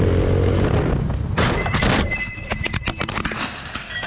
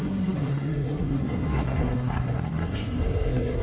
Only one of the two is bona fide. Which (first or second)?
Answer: first